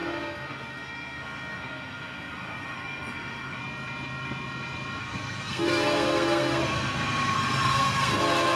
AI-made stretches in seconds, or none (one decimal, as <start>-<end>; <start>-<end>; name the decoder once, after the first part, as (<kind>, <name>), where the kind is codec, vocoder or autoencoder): 0.0-3.6 (codec, SNAC); 5.0-8.2